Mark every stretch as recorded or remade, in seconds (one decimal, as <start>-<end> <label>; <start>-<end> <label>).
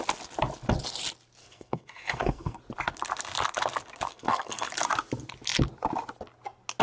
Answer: 0.0-1.4 recorded; 1.4-2.6 remade; 2.6-4.1 recorded; 4.1-4.7 remade; 4.7-6.8 recorded